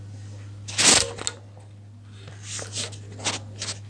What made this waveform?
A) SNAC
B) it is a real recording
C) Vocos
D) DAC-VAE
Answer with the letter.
B